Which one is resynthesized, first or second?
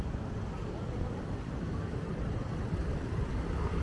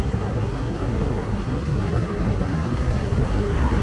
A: second